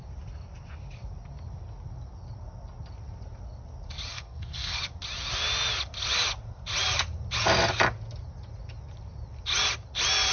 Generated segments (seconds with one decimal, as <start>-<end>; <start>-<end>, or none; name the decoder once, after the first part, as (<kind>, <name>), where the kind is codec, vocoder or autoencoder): 4.1-4.8 (codec, SNAC)